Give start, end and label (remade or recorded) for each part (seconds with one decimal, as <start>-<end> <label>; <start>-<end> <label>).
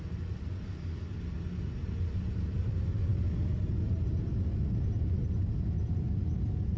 0.0-6.8 recorded